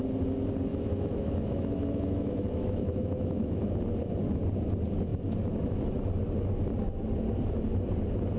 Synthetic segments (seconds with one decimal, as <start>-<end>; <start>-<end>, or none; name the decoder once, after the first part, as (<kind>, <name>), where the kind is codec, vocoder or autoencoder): 0.7-3.8 (autoencoder, DAC-VAE)

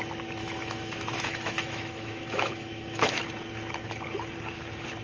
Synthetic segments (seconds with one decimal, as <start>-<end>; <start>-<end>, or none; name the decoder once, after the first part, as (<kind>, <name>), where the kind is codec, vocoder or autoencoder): 0.4-3.2 (autoencoder, DAC-VAE)

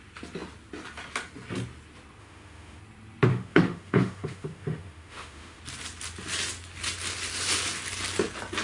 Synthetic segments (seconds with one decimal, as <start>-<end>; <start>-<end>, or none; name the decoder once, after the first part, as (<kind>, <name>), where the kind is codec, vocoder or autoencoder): 2.2-2.8 (autoencoder, DAC-VAE); 3.3-5.6